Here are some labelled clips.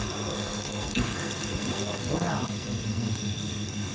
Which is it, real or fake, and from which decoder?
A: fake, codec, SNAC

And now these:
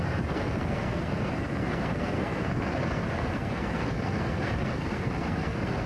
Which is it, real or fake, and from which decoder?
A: fake, codec, SNAC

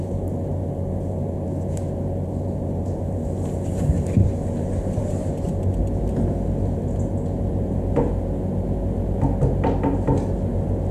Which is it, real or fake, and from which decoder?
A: real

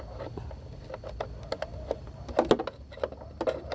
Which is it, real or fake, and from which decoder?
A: real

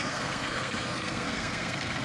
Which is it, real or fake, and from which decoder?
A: fake, codec, SNAC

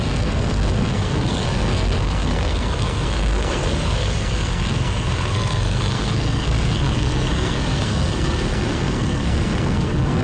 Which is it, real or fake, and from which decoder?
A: fake, codec, SNAC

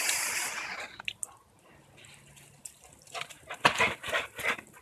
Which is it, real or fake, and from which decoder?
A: real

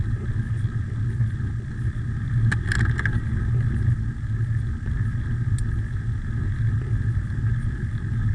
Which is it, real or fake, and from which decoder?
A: real